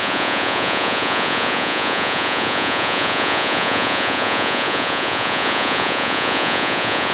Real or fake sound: fake